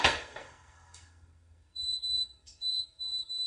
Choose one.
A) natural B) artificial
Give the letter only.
B